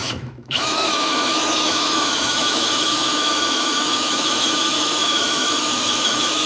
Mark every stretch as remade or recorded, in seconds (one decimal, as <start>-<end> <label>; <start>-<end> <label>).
0.0-6.5 remade